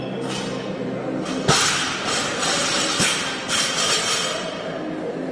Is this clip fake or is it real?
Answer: real